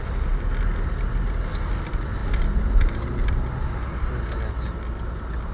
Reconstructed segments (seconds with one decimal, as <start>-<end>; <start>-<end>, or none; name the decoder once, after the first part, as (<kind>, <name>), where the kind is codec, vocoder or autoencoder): none